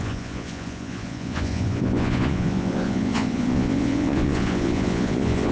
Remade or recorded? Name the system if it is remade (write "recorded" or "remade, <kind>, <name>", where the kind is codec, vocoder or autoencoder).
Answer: remade, vocoder, Vocos